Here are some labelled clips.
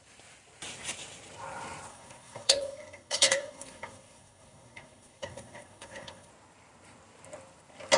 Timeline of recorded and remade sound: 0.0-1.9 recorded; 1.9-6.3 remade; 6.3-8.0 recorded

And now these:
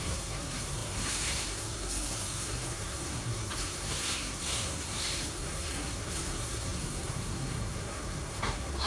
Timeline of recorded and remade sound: 0.0-8.9 remade

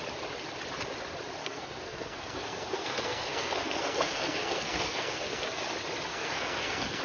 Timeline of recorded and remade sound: 0.0-1.4 recorded; 1.4-5.6 remade; 5.6-6.1 recorded; 6.1-7.0 remade

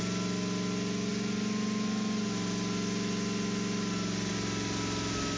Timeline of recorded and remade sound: 0.0-5.4 recorded

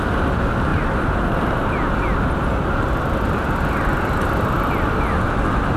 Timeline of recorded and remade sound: 0.0-5.8 recorded

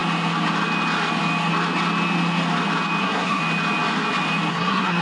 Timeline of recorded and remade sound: 0.0-3.0 recorded; 3.0-3.4 remade; 3.4-4.5 recorded; 4.5-5.0 remade